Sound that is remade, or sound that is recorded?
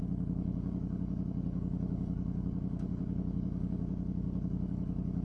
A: remade